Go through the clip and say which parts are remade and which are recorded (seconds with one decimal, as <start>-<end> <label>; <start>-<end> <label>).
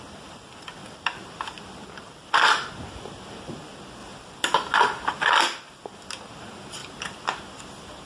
0.0-8.1 recorded